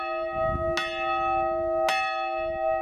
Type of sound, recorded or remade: recorded